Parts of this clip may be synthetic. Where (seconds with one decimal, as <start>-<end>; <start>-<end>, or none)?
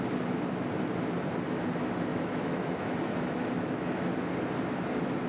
2.1-4.0